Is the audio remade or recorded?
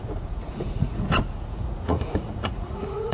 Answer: remade